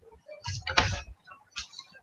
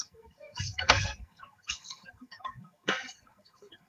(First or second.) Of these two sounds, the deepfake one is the second